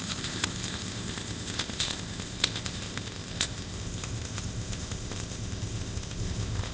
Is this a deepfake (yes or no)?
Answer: yes